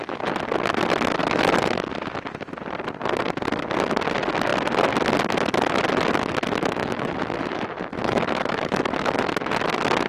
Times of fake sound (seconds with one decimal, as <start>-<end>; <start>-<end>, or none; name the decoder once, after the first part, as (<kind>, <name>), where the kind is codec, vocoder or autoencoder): 1.2-1.9 (autoencoder, DAC-VAE); 6.8-9.5